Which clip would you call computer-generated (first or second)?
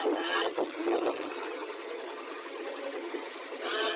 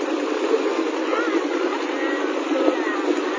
first